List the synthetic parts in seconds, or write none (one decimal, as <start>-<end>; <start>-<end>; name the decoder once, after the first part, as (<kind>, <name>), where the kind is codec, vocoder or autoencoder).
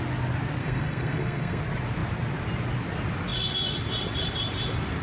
0.6-1.6 (codec, SNAC)